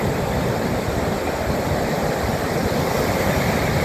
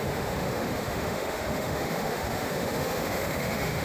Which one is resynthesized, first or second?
second